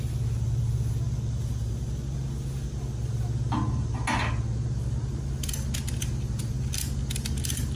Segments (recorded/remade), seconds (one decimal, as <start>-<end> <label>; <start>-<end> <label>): 0.0-7.8 recorded